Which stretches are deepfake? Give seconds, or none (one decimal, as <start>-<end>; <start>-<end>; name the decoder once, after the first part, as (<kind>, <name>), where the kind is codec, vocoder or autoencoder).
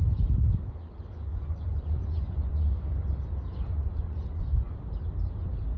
1.1-2.9 (vocoder, Vocos); 3.7-4.8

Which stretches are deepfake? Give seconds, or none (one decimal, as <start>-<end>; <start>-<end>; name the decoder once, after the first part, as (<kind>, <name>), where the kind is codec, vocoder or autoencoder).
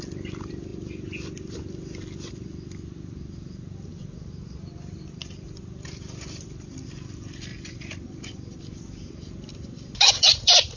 none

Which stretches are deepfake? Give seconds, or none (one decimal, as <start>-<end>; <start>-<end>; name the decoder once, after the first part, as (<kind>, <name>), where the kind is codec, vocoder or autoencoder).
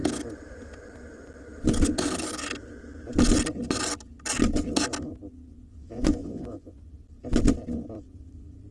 5.5-6.9 (vocoder, Vocos)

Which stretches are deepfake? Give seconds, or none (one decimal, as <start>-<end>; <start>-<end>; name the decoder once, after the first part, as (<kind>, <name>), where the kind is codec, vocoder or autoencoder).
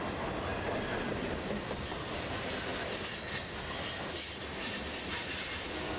none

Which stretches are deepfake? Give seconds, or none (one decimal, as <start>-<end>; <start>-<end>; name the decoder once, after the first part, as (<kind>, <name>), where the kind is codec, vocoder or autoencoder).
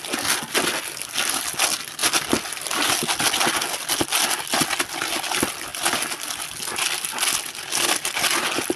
none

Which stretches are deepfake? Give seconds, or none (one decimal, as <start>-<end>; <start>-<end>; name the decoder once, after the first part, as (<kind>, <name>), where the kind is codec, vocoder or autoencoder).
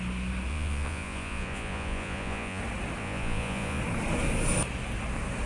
0.5-2.6 (vocoder, Vocos); 3.0-3.8